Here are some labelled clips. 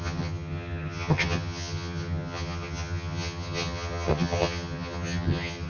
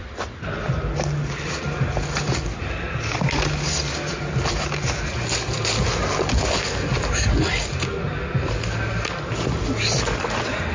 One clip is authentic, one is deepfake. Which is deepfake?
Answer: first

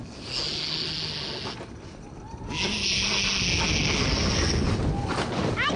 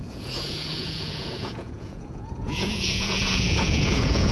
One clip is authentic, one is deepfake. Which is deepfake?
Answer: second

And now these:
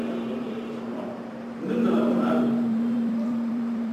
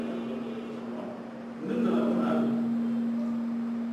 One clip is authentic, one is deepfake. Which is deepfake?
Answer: first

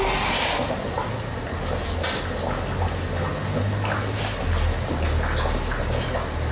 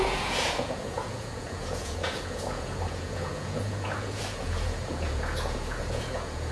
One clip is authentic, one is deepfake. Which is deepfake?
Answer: second